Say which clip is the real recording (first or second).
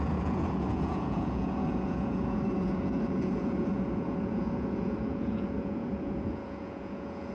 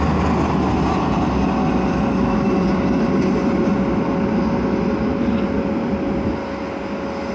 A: second